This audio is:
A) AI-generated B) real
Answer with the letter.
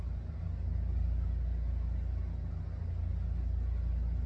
B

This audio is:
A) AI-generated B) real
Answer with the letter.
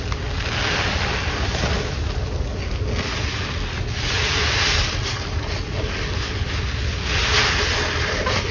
B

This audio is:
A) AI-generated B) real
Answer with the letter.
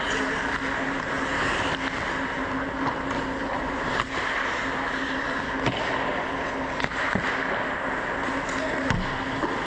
B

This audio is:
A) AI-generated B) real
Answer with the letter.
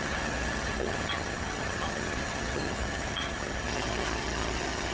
A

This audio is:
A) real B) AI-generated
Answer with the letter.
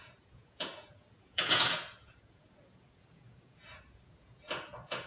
B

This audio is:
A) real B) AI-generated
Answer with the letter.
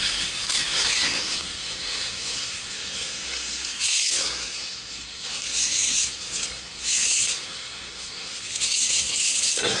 B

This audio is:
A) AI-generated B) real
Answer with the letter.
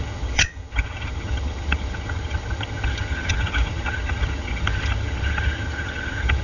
A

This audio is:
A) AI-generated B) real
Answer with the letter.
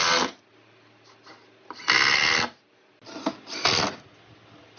B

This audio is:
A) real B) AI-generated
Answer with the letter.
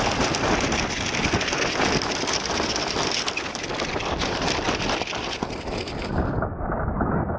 A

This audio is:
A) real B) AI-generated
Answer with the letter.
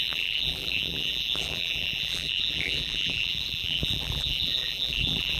B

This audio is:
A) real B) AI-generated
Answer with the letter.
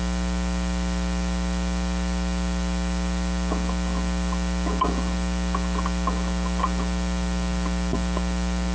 A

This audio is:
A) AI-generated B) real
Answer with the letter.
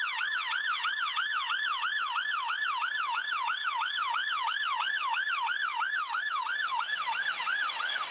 A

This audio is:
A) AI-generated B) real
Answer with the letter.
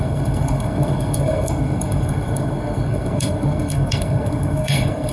A